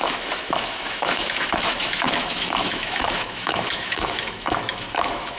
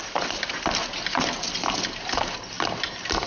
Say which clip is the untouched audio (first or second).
second